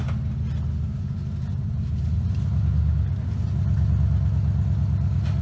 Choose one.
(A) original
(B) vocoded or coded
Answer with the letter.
A